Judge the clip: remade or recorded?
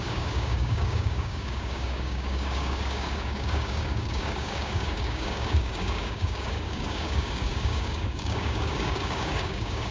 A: remade